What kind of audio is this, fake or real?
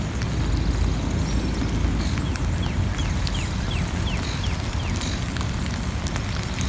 real